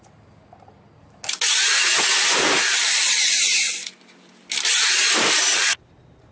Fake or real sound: real